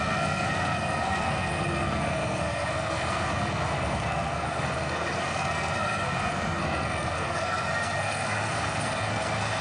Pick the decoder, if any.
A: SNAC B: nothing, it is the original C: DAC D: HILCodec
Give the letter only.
A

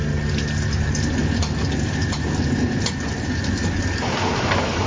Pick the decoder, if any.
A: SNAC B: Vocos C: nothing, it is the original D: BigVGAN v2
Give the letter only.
C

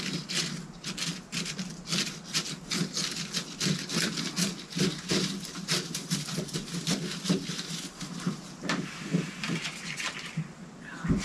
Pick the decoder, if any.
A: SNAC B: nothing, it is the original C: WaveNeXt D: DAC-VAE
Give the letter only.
B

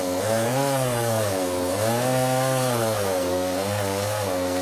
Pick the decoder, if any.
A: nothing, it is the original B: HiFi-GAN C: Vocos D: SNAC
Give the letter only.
D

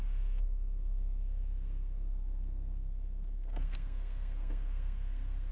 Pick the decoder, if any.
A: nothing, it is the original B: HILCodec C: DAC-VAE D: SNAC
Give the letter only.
D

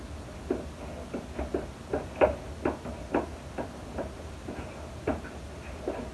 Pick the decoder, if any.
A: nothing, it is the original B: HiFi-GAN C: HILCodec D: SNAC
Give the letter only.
A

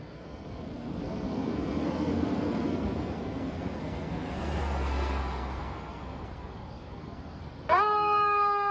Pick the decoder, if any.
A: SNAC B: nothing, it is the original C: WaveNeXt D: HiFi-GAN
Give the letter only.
A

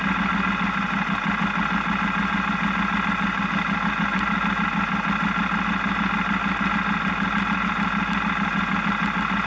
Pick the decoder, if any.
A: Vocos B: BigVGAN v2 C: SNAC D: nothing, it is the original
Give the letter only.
D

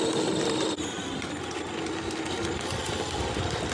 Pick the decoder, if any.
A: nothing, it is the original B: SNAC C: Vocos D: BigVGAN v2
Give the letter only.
A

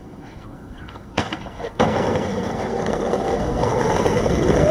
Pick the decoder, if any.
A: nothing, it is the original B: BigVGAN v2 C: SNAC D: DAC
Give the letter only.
C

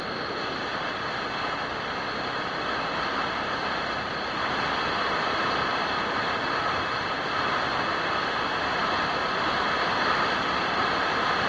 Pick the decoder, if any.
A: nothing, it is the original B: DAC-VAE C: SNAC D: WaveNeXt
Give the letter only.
A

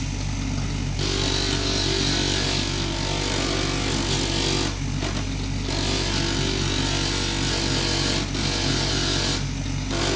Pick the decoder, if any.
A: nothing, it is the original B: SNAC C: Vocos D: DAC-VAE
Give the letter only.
A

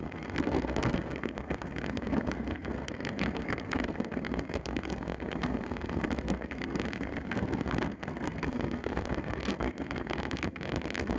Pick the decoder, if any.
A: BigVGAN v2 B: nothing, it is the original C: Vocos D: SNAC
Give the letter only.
D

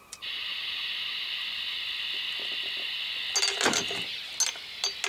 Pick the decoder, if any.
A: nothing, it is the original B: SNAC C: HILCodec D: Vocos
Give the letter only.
A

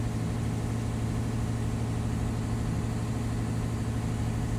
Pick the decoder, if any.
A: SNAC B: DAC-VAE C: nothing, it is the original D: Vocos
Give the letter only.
C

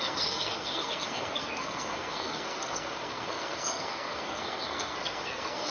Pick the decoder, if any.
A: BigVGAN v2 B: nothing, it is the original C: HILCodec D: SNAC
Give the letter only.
D